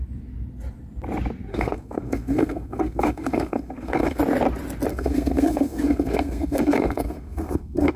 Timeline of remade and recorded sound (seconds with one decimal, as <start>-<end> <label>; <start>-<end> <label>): 0.0-1.5 recorded; 1.5-4.2 remade; 4.2-4.9 recorded; 4.9-8.0 remade